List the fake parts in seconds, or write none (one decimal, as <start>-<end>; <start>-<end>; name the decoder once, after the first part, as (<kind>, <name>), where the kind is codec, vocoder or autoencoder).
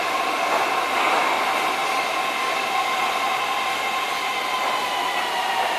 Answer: none